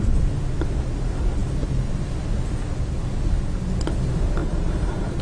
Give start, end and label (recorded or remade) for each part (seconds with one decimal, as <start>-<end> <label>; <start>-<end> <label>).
0.0-4.4 recorded; 4.4-5.2 remade